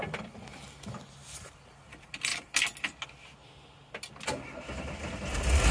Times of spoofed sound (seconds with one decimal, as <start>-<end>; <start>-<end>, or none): none